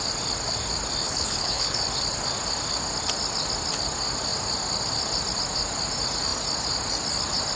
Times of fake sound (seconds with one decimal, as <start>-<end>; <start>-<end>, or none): 1.0-1.8